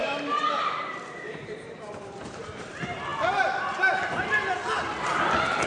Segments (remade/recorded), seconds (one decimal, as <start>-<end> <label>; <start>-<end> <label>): 0.0-2.7 remade; 2.7-5.7 recorded